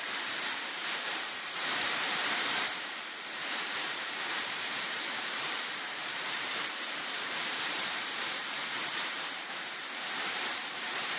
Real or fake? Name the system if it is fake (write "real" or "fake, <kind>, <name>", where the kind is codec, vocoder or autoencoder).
fake, vocoder, BigVGAN v2